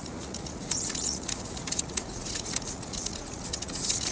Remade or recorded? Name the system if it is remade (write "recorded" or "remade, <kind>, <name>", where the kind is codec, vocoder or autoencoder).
remade, vocoder, Vocos